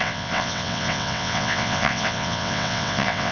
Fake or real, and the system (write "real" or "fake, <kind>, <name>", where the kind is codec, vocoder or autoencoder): fake, vocoder, WaveNeXt